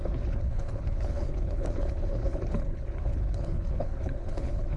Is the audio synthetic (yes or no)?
yes